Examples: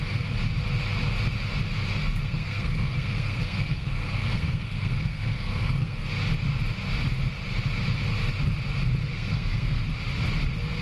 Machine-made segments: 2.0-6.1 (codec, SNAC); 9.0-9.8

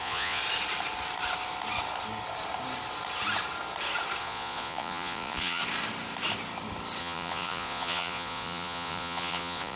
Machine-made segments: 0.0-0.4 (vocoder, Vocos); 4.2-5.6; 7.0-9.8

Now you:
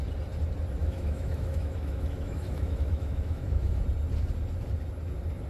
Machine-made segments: 0.8-3.8 (autoencoder, DAC-VAE)

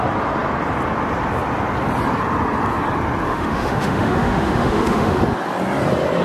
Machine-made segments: 3.3-5.2 (autoencoder, DAC-VAE)

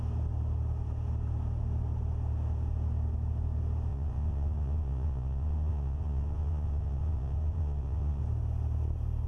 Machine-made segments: 3.9-8.2 (vocoder, Vocos)

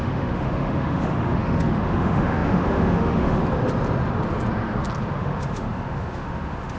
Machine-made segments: 0.0-3.4 (autoencoder, DAC-VAE); 5.2-6.8